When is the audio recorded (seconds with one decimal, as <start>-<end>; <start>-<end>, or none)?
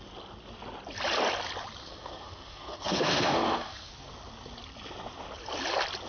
0.0-1.8; 3.9-6.1